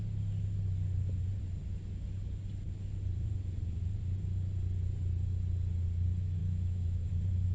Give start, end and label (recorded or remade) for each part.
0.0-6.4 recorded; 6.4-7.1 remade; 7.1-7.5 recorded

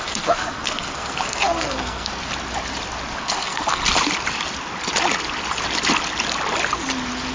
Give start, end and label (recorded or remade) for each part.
0.0-2.2 remade; 2.2-3.2 recorded; 3.2-3.8 remade; 3.8-7.3 recorded

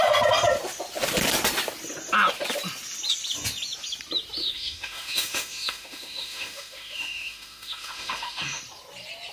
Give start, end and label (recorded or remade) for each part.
0.0-4.4 recorded; 4.4-8.6 remade; 8.6-9.3 recorded

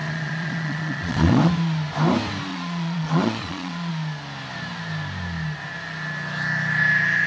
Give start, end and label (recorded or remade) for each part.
0.0-1.5 remade; 1.5-2.5 recorded; 2.5-3.9 remade; 3.9-7.3 recorded

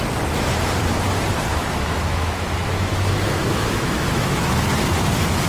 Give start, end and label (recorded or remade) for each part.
0.0-1.5 recorded; 1.5-4.5 remade; 4.5-5.5 recorded

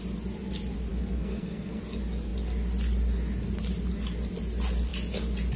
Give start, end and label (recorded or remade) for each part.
0.0-0.9 recorded; 0.9-1.8 remade; 1.8-5.6 recorded

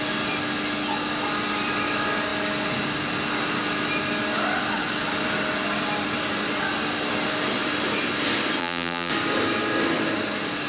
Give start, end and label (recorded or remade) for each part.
0.0-8.6 recorded; 8.6-9.1 remade; 9.1-10.7 recorded

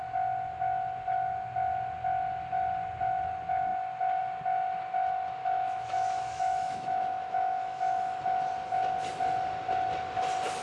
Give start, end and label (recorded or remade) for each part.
0.0-5.4 recorded; 5.4-8.2 remade; 8.2-10.6 recorded